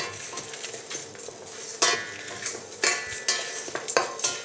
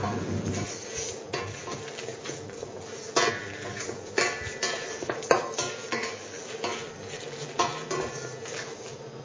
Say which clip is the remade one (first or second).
second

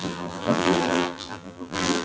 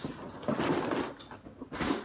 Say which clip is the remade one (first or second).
first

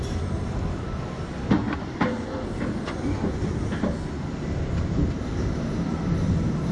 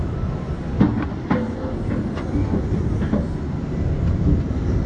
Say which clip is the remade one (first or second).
first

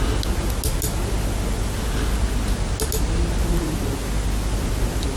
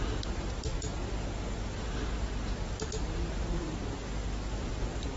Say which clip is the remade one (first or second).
second